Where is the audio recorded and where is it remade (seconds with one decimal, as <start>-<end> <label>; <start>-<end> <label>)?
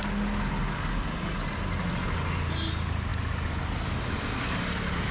0.0-5.1 recorded